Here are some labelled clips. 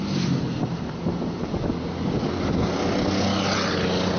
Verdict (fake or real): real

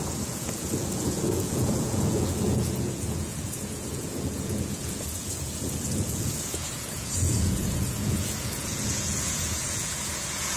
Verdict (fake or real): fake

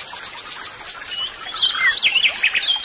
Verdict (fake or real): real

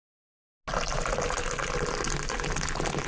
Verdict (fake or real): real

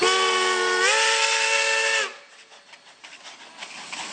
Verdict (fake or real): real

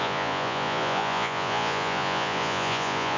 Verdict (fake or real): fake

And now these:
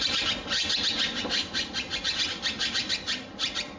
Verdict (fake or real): real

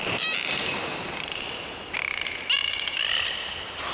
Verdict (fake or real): real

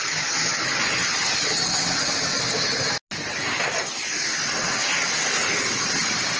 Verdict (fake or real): real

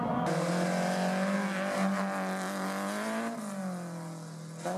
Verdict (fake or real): real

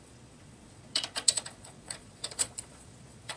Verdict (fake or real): fake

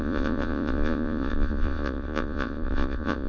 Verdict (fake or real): fake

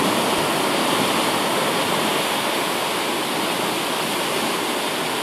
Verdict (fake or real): real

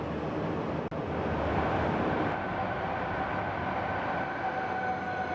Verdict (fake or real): real